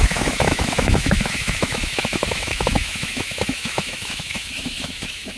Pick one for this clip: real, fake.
fake